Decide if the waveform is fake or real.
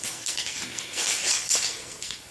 fake